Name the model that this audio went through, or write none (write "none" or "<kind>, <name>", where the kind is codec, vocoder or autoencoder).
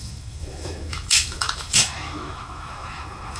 autoencoder, DAC-VAE